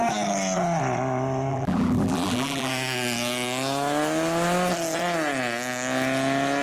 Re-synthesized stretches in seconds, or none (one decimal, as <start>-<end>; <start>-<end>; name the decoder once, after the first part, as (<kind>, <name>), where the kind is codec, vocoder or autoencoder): 1.5-2.7 (vocoder, BigVGAN v2)

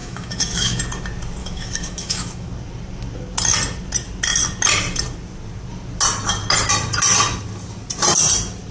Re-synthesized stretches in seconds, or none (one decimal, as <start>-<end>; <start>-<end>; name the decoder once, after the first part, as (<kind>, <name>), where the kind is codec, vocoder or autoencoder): 0.0-0.8 (autoencoder, DAC-VAE); 1.4-2.5

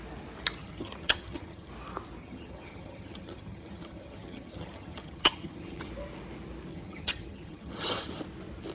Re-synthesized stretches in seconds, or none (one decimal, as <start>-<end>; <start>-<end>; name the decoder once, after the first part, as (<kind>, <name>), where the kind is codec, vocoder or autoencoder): 0.6-1.7 (vocoder, HiFi-GAN); 2.2-5.9; 6.7-8.1

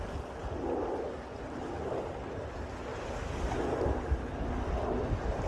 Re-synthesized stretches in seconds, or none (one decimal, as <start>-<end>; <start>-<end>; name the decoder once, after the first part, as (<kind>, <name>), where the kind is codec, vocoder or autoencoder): none

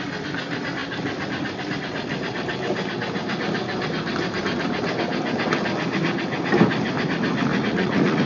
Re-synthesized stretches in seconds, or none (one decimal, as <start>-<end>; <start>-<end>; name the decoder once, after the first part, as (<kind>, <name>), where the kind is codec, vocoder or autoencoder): 7.5-8.3 (vocoder, Vocos)